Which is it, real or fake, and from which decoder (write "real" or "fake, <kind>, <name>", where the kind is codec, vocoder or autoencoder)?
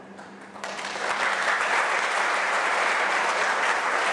fake, vocoder, BigVGAN v2